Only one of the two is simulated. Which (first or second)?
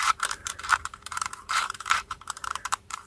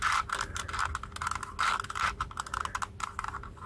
first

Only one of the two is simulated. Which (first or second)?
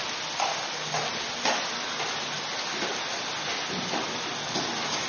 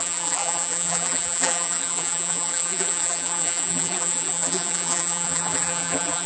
second